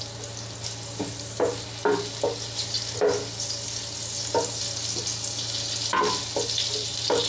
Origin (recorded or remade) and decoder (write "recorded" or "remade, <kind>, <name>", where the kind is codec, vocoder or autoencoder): recorded